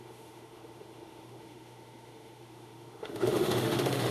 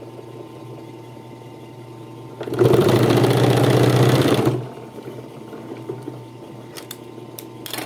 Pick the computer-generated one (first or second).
first